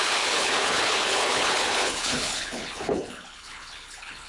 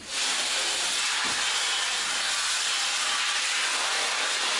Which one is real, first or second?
second